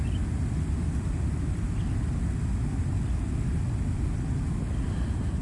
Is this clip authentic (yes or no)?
yes